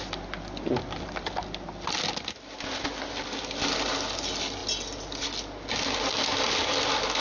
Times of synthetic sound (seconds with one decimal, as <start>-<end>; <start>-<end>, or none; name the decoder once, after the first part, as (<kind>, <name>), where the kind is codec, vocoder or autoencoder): none